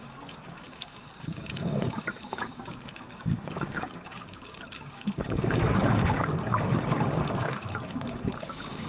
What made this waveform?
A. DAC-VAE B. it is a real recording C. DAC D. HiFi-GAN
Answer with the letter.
C